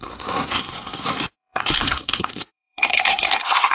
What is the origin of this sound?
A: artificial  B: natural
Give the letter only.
A